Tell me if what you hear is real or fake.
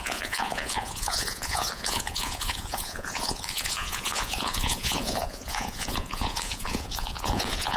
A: fake